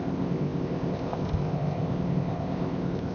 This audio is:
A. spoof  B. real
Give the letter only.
A